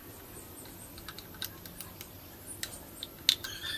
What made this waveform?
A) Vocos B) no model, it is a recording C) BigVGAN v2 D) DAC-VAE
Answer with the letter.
B